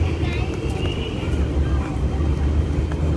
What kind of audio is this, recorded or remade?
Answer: recorded